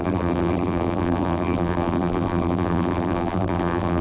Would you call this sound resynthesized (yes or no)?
yes